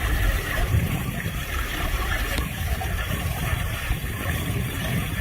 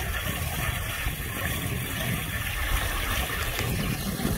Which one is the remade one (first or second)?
first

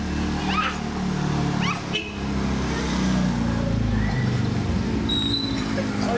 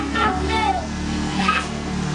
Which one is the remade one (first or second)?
second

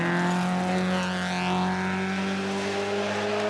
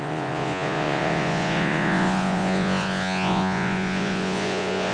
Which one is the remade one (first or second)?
second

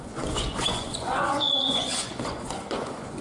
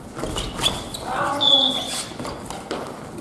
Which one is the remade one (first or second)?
first